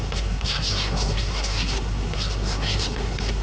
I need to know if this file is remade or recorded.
remade